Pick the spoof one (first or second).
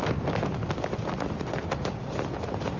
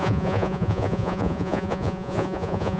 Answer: second